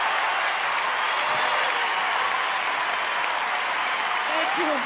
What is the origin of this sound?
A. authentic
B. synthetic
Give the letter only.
A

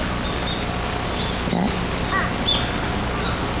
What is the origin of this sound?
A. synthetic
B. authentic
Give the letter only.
B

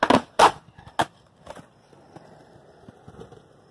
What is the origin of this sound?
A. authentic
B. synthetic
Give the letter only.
A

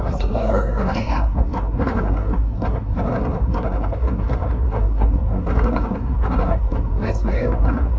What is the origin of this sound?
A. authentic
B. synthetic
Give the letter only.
B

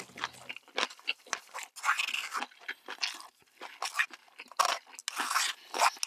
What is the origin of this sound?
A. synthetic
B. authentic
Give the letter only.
B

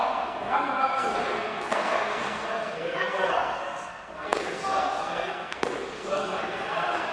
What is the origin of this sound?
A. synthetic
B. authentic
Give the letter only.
A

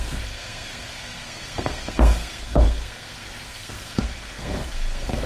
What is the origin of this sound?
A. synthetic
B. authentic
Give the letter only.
A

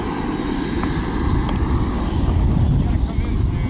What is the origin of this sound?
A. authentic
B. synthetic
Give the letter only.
A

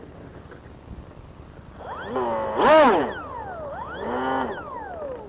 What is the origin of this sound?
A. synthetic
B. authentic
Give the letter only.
B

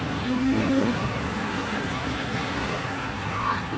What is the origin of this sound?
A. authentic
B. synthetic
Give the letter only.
B